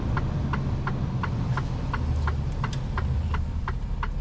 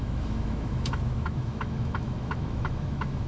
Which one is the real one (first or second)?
first